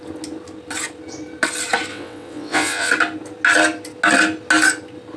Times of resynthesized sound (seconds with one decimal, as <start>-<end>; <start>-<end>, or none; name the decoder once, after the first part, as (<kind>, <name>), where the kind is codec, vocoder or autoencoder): 1.9-2.9 (vocoder, WaveNeXt)